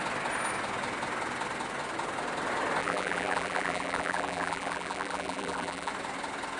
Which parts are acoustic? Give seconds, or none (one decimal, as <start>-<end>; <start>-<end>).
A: 0.0-2.8; 5.9-6.6